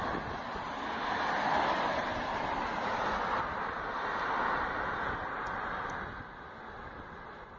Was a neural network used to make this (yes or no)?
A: no